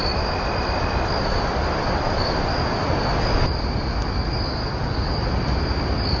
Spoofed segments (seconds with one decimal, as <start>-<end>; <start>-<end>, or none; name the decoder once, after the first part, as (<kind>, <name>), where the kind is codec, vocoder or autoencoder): none